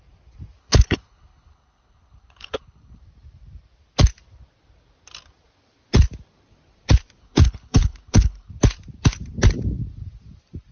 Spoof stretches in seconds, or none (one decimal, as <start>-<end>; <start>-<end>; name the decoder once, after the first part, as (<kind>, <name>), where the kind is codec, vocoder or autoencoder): 0.6-3.0 (codec, HILCodec); 7.2-8.5